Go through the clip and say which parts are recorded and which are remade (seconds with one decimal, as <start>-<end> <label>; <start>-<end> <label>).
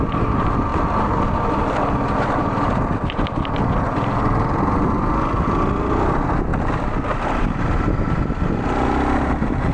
0.0-9.7 recorded